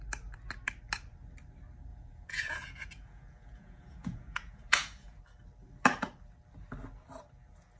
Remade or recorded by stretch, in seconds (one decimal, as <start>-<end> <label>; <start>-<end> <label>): 0.0-1.9 recorded; 1.9-5.2 remade; 5.2-7.8 recorded